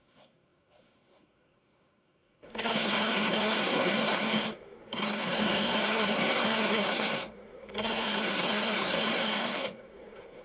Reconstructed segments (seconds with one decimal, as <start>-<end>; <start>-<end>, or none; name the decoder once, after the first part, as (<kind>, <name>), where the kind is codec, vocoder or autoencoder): 0.0-10.4 (codec, SNAC)